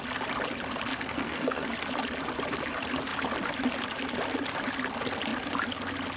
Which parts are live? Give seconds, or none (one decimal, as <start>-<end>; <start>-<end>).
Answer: 0.0-0.9; 1.7-6.2